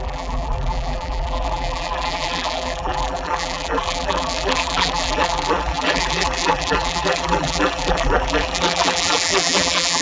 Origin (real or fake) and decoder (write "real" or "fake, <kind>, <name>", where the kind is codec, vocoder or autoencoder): fake, vocoder, BigVGAN v2